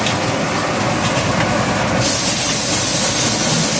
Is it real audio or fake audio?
real